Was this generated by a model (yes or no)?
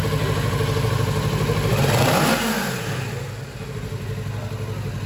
no